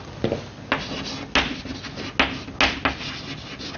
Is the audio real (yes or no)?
yes